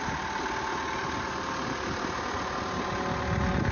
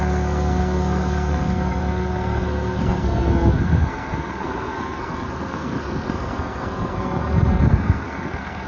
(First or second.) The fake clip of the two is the second